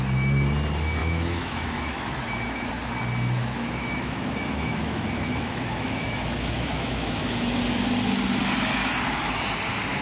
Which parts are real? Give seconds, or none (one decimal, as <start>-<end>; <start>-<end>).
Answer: 0.0-1.0; 2.7-3.4; 7.6-10.0